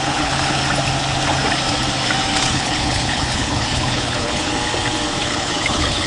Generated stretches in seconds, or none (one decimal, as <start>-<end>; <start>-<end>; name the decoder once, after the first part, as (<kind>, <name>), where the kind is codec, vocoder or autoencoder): 0.0-0.6 (codec, HILCodec); 2.5-4.5; 5.2-6.1